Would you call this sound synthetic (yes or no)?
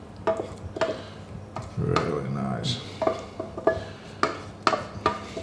no